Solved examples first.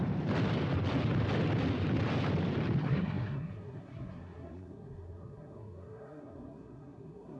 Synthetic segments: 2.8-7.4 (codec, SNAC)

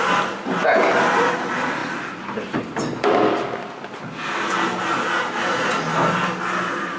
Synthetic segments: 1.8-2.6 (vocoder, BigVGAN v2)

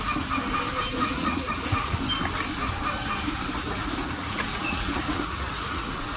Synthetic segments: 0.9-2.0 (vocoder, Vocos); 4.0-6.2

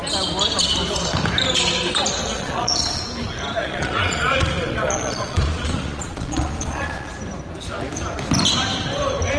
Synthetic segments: 2.2-3.0 (vocoder, Vocos); 3.6-7.1

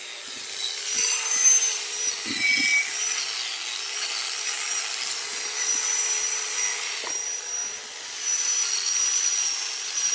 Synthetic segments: none